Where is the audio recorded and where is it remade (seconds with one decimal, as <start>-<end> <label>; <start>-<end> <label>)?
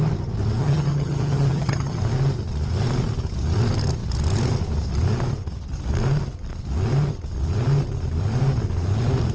0.0-0.6 recorded; 0.6-2.0 remade; 2.0-9.3 recorded